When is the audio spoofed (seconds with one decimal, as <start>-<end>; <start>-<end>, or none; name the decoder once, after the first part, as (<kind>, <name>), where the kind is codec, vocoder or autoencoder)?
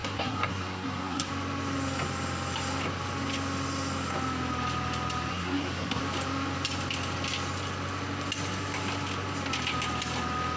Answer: 0.0-1.3 (codec, SNAC); 5.3-6.0